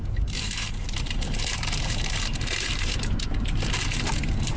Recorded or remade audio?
remade